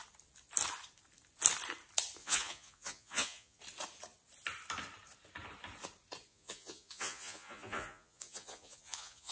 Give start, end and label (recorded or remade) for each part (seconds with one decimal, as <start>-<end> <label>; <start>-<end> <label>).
0.0-2.2 recorded; 2.2-3.6 remade; 3.6-6.3 recorded; 6.3-9.3 remade